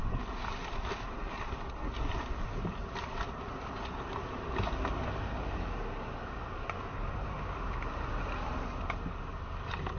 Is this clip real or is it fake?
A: real